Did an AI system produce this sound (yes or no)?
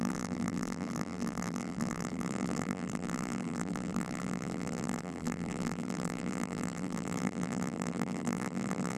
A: yes